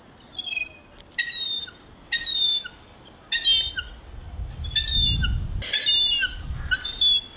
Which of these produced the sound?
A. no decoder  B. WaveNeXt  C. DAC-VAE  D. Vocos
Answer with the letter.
A